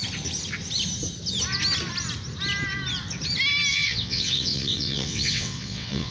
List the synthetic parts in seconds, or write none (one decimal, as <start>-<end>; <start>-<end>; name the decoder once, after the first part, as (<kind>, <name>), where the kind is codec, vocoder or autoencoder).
3.7-6.1 (vocoder, WaveNeXt)